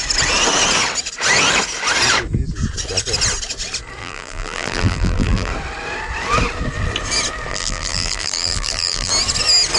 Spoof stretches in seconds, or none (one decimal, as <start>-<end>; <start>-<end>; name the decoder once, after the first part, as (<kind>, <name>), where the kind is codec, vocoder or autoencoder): 4.0-5.5 (vocoder, BigVGAN v2); 7.5-9.1

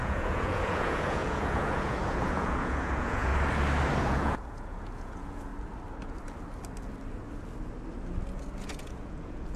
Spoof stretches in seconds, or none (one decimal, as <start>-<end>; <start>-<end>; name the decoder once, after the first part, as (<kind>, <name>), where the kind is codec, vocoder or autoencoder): 0.0-3.3 (vocoder, Vocos); 4.0-5.5; 8.6-9.6

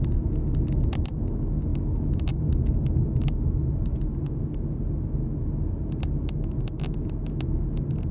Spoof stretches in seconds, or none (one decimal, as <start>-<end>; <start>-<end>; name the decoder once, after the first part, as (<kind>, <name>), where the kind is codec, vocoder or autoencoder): none

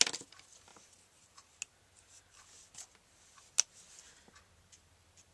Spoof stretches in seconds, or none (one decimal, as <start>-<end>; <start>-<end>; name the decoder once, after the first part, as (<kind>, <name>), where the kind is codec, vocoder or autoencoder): none

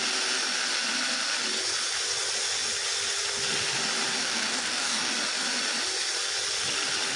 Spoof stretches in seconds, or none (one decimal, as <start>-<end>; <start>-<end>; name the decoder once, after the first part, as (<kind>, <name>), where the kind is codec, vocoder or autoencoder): 4.2-5.1 (codec, DAC)

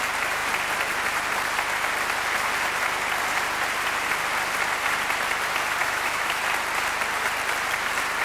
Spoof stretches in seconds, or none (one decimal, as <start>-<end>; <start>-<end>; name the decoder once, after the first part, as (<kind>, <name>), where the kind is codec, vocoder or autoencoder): 5.8-6.4 (autoencoder, DAC-VAE)